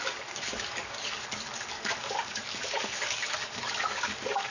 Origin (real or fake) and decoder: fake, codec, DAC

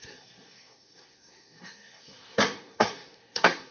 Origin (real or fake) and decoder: fake, codec, SNAC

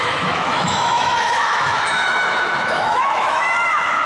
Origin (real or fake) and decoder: fake, autoencoder, DAC-VAE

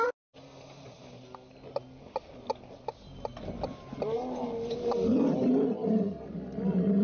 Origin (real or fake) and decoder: real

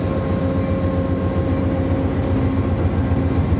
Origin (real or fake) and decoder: real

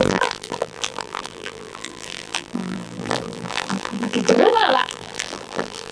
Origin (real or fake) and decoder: fake, vocoder, BigVGAN v2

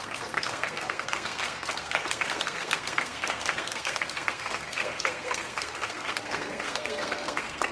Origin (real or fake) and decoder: fake, codec, SNAC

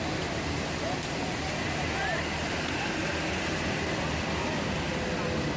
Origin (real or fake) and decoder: real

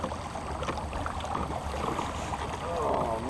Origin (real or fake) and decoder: real